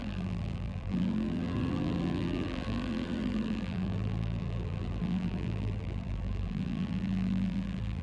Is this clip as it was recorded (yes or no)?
no